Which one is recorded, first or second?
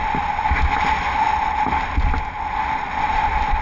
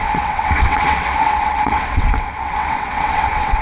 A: first